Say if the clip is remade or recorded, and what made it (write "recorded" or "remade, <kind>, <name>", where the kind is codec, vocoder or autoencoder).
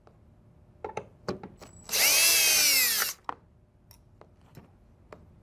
recorded